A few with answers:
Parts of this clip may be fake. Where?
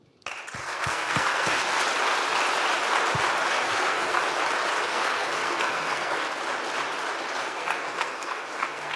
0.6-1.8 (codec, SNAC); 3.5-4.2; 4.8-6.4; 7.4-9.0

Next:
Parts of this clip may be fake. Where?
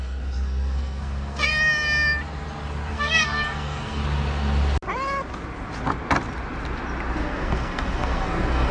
0.0-1.5 (codec, SNAC); 2.9-4.0; 7.2-8.7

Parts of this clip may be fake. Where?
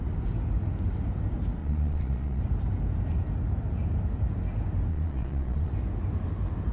1.6-2.4 (vocoder, Vocos); 4.9-5.7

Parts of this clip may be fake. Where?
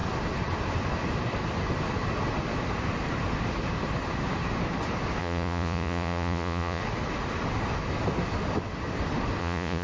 5.2-6.8 (vocoder, Vocos); 9.4-9.8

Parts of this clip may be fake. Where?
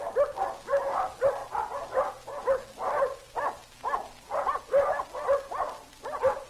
none